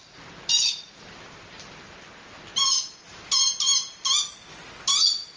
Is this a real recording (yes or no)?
yes